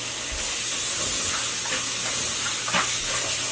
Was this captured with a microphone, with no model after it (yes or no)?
yes